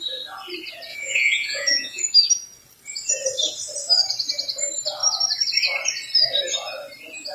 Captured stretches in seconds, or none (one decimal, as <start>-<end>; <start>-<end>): 0.0-0.9; 2.0-7.3